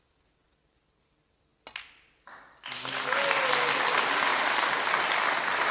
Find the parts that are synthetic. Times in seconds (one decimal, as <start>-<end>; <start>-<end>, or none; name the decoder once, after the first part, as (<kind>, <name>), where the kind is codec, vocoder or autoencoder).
none